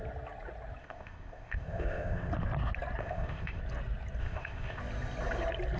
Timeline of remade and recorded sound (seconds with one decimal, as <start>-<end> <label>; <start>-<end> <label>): 0.0-0.8 recorded; 0.8-2.3 remade; 2.3-3.0 recorded; 3.0-3.6 remade; 3.6-4.2 recorded; 4.2-4.8 remade; 4.8-5.8 recorded